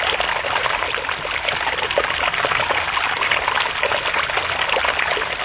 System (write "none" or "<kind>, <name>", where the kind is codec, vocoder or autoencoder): none